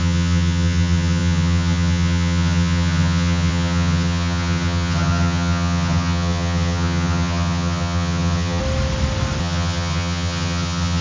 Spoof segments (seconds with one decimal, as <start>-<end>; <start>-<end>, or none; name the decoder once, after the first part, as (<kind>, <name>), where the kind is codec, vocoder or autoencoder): 0.0-8.6 (vocoder, HiFi-GAN); 9.4-11.0